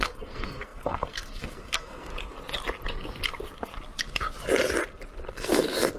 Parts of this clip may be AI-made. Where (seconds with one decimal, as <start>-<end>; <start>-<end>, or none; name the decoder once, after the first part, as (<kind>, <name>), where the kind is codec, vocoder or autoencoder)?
0.0-2.1 (codec, SNAC); 5.3-6.0